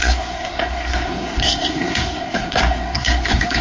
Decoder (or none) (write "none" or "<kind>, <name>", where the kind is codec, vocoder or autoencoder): codec, SNAC